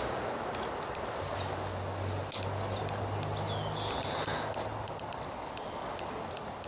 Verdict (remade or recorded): recorded